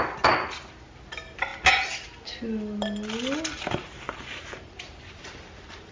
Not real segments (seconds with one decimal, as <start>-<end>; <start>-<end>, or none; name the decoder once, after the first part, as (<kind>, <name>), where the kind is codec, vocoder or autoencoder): none